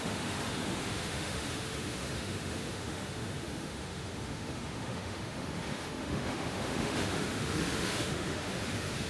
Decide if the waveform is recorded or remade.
remade